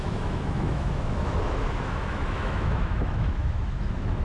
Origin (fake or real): fake